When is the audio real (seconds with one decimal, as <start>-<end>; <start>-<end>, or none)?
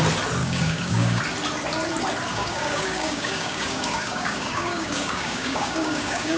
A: 0.0-0.4; 1.2-2.3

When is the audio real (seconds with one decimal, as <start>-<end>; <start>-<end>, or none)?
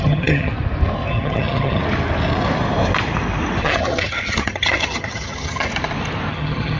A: 0.5-1.1; 1.8-3.6; 5.7-6.3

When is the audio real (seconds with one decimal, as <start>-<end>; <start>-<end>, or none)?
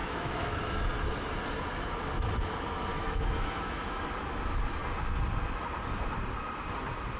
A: 0.6-2.9; 4.0-7.2